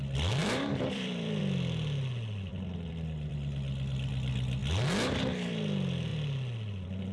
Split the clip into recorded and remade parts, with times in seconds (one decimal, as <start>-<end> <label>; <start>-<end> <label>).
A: 0.0-0.4 recorded; 0.4-1.4 remade; 1.4-2.5 recorded; 2.5-4.1 remade; 4.1-7.1 recorded